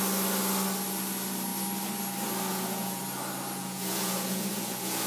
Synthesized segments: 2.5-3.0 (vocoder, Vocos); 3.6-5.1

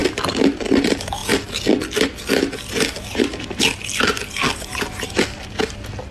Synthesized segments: none

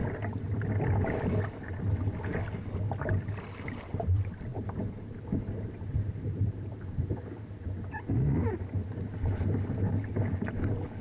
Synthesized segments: 4.5-7.0 (vocoder, BigVGAN v2)

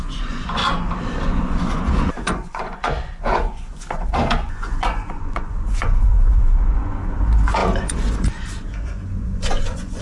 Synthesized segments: 0.0-0.6 (vocoder, Vocos); 1.2-10.0

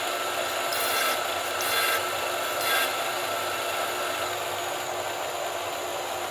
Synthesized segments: none